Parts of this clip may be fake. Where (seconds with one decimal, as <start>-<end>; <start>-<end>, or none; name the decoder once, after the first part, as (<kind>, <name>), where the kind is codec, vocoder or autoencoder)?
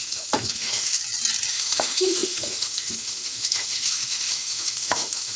0.0-1.0 (autoencoder, DAC-VAE); 1.5-5.4